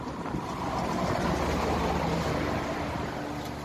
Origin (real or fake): real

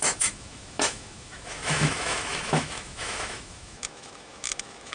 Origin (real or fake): fake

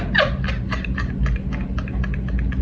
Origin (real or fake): real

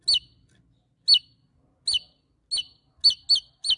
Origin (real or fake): real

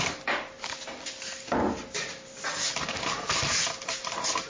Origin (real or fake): real